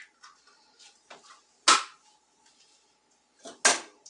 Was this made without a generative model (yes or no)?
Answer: yes